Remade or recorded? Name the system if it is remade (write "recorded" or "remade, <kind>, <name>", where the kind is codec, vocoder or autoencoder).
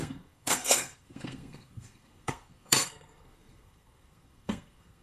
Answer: remade, codec, SNAC